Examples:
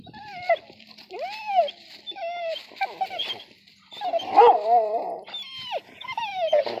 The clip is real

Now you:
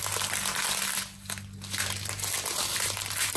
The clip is real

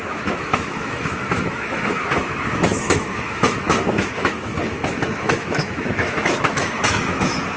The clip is fake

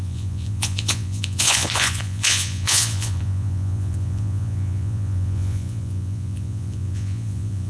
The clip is fake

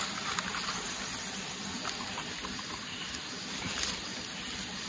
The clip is real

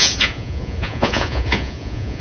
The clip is fake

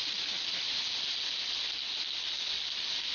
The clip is real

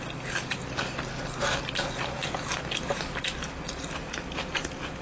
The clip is real